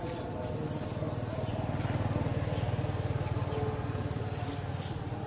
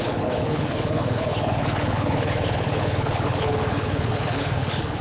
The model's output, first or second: second